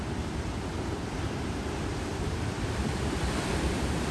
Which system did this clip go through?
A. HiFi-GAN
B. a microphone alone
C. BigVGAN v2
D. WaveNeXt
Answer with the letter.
C